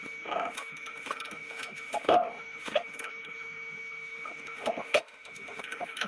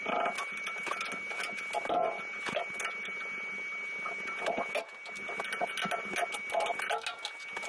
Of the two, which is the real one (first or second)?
second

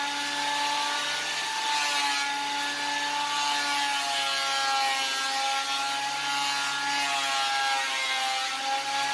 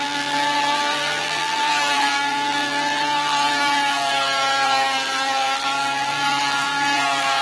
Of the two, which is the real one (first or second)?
first